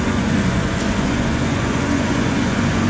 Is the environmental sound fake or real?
fake